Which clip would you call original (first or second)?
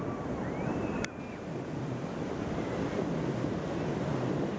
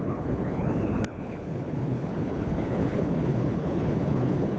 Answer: first